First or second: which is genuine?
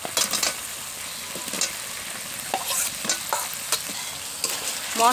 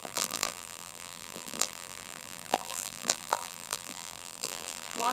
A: first